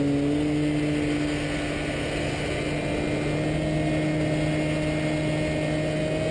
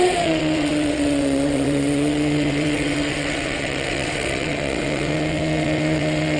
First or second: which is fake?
second